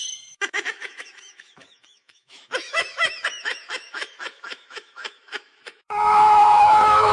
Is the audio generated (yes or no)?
yes